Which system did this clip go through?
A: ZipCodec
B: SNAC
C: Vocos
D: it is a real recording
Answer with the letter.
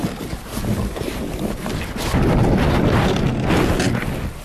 D